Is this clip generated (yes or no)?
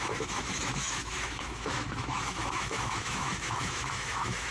yes